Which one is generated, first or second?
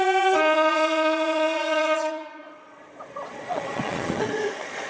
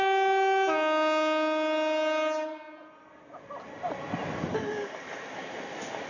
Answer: first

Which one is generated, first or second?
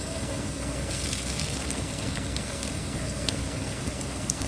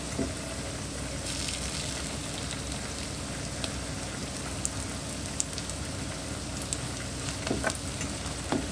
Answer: first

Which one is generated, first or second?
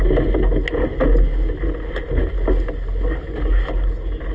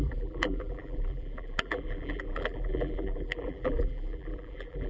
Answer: second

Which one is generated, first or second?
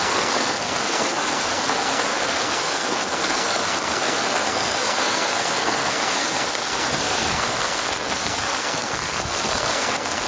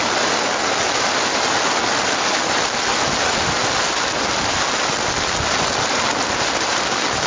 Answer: first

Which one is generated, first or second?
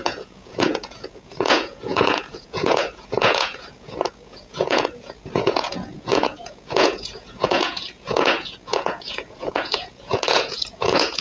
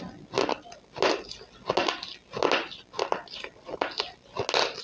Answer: first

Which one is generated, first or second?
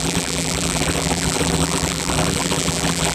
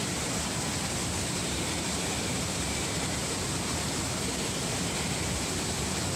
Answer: first